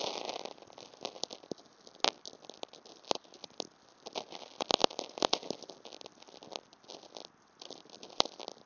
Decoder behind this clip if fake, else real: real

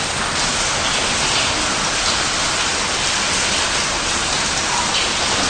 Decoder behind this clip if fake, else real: real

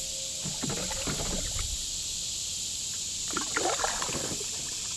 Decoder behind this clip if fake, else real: real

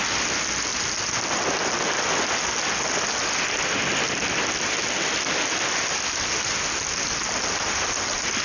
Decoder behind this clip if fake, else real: real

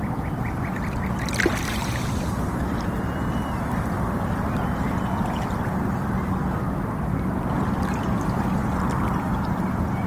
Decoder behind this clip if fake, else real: real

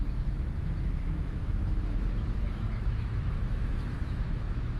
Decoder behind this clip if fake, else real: fake, autoencoder, DAC-VAE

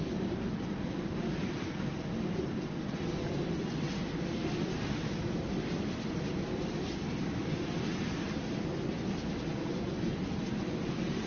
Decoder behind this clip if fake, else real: real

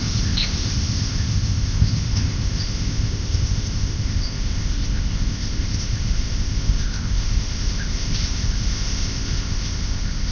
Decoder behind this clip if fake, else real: fake, codec, ZipCodec